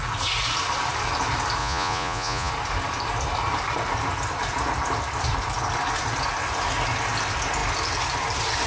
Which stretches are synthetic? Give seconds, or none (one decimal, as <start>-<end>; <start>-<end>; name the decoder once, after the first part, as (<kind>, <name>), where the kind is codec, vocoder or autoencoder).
1.6-2.5 (vocoder, Vocos)